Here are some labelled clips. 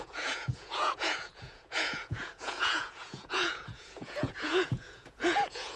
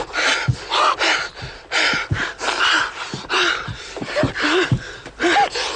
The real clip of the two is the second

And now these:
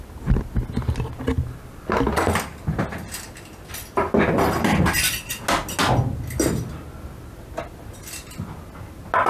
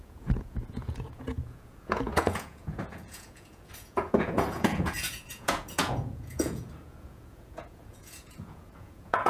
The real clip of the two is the first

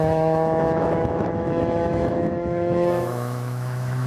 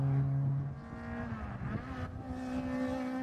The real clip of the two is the second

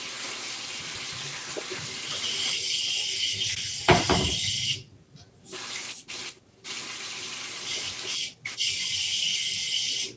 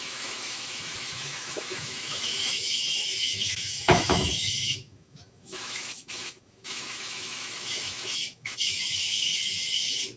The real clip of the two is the first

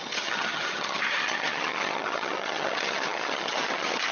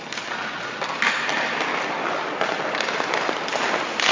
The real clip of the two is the second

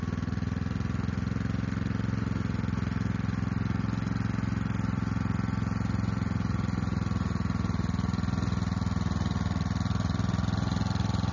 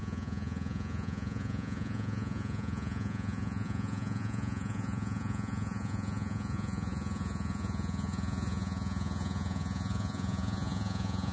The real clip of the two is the first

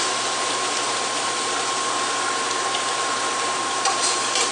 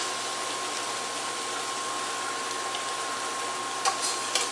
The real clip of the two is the second